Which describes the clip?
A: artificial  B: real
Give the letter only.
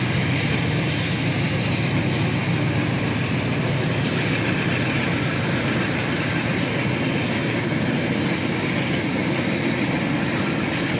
A